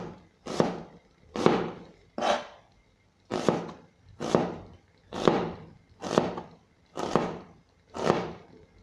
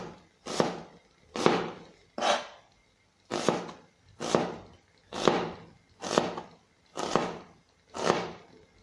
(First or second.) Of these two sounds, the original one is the second